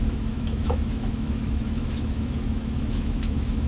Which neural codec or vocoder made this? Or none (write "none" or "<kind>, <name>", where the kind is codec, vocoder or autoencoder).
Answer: autoencoder, DAC-VAE